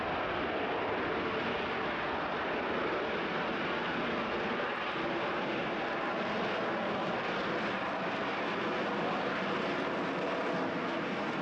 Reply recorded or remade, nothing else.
recorded